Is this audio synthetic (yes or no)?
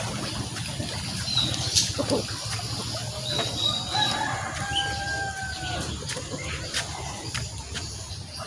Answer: no